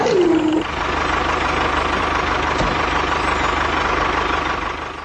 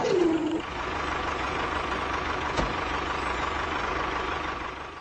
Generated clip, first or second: second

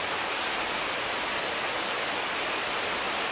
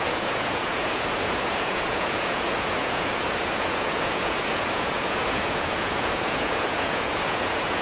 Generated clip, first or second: second